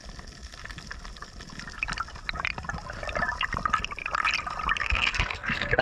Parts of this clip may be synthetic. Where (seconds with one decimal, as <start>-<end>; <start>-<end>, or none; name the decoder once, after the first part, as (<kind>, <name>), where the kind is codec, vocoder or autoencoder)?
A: 4.8-5.8 (codec, SNAC)